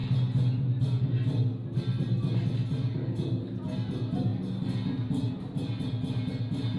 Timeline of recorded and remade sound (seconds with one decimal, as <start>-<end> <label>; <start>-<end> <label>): 0.0-6.8 recorded